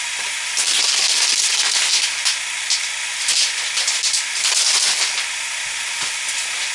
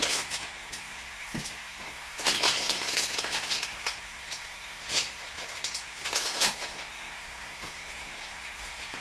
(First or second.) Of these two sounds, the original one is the first